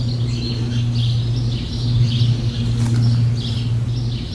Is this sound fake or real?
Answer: real